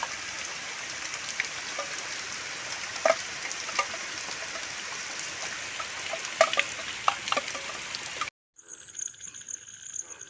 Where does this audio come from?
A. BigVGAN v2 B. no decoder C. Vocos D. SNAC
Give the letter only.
B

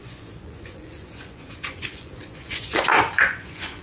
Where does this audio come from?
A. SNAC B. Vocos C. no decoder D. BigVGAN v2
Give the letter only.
B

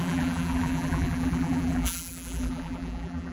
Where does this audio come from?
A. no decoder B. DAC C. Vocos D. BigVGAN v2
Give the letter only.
D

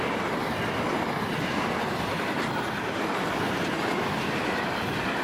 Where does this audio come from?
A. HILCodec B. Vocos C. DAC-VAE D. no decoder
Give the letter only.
D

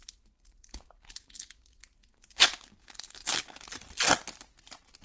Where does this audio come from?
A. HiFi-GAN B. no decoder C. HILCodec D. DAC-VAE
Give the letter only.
B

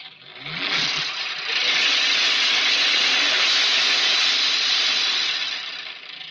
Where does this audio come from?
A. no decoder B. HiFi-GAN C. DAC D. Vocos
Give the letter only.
A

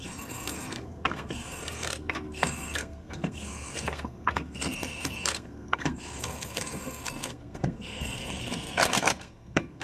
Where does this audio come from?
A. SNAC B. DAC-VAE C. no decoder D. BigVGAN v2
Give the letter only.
A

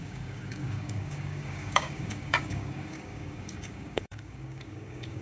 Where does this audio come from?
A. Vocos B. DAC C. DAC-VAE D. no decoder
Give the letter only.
B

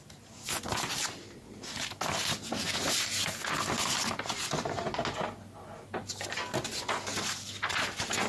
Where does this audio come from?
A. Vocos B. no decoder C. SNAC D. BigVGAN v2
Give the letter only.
B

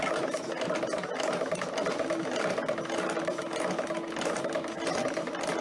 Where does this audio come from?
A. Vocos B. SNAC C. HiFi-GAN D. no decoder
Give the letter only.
D